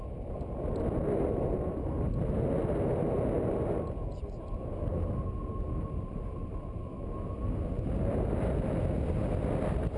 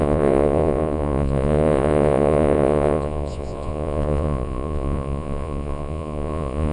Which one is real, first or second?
first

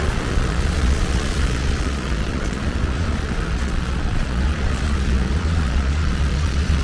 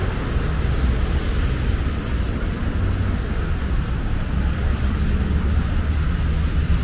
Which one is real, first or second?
second